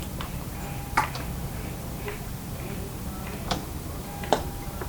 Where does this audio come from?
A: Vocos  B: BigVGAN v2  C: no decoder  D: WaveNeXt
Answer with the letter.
B